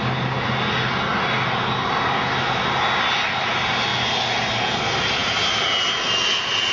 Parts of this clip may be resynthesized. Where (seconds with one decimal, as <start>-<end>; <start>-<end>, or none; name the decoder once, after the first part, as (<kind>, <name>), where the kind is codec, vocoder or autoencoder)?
none